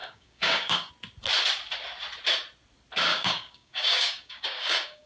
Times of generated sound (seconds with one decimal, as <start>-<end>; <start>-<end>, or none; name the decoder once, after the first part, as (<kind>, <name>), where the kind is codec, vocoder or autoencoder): 0.0-0.9 (codec, DAC); 3.1-5.1